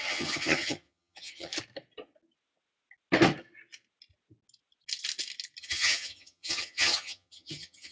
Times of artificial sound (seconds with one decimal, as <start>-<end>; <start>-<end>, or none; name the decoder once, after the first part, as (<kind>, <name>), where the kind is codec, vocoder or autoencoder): 0.0-1.5 (vocoder, HiFi-GAN); 5.6-7.9